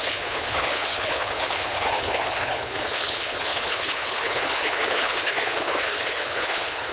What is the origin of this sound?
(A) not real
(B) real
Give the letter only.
A